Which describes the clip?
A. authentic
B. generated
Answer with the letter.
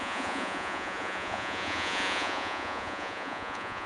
B